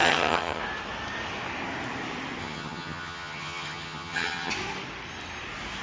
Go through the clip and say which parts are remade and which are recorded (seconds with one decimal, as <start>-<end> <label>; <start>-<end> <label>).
0.0-0.6 remade; 0.6-2.4 recorded; 2.4-4.5 remade; 4.5-5.8 recorded